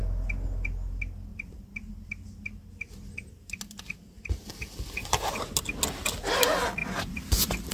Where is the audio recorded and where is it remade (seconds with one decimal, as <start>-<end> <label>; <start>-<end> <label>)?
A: 0.0-1.3 recorded; 1.3-2.4 remade; 2.4-5.0 recorded; 5.0-5.5 remade; 5.5-6.8 recorded; 6.8-7.7 remade